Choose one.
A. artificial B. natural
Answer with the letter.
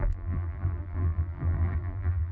A